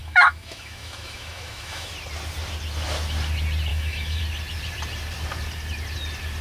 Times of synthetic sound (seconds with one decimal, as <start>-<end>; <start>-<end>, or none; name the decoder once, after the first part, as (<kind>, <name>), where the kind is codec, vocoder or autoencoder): 0.0-1.9 (autoencoder, DAC-VAE); 3.7-4.2